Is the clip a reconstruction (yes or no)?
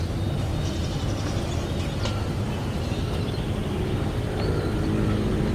no